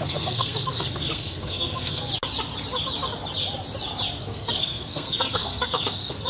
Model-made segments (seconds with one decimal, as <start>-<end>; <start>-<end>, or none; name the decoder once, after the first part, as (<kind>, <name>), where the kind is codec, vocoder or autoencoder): 0.0-2.1 (codec, SNAC); 4.2-6.3